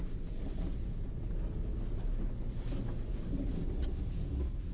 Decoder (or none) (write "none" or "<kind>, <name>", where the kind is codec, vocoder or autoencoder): none